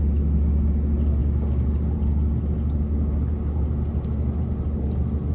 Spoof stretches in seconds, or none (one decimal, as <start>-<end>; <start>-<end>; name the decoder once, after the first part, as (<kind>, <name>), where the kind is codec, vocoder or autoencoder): none